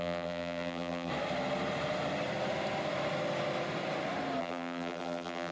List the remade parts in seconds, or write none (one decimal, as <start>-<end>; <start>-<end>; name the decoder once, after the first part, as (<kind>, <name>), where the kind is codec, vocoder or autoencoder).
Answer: 0.0-1.1 (vocoder, BigVGAN v2); 4.4-5.5